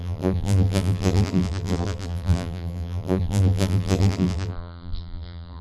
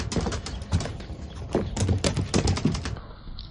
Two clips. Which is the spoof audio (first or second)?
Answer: first